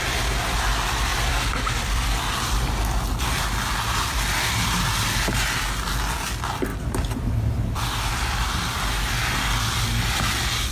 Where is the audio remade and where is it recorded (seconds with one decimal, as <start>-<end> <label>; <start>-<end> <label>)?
0.0-1.1 recorded; 1.1-2.7 remade; 2.7-10.7 recorded